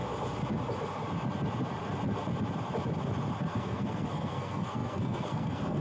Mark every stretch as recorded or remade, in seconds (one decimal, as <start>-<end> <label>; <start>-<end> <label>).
0.0-3.5 recorded; 3.5-5.8 remade